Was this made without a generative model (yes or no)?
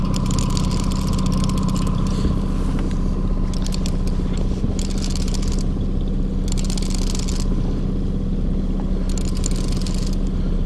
yes